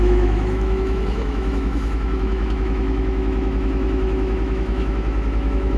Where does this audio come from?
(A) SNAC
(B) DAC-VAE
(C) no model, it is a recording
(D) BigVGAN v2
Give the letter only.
B